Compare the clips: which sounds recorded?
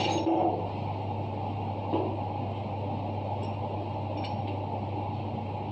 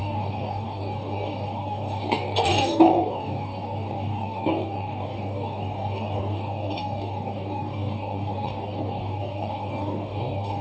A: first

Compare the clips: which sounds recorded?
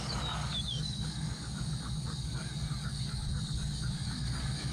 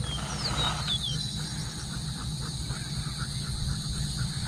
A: second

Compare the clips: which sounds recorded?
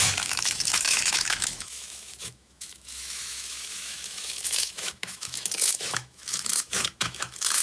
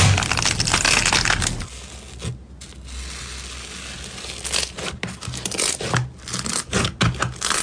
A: second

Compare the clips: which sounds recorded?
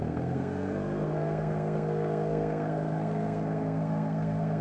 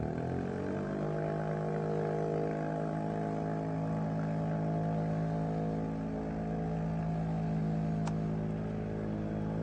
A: second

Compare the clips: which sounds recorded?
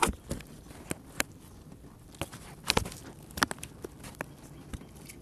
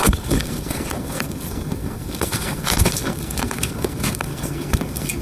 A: first